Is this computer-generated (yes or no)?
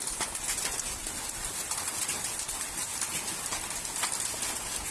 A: no